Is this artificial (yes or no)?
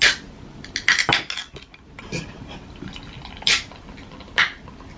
no